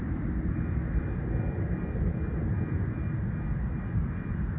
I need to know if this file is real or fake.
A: real